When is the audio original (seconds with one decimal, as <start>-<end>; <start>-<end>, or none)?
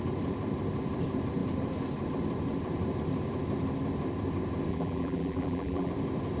0.0-4.7; 5.9-6.4